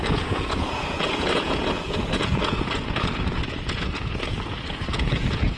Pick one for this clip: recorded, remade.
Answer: remade